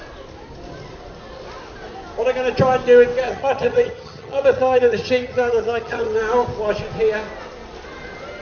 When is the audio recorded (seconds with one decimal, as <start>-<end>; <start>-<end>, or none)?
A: 0.0-3.3; 6.2-8.4